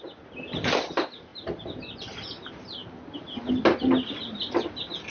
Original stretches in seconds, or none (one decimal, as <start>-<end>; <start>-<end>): 0.0-5.1